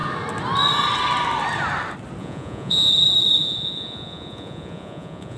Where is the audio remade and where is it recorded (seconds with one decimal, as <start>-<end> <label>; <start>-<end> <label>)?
0.0-2.2 recorded; 2.2-2.9 remade; 2.9-3.4 recorded; 3.4-5.4 remade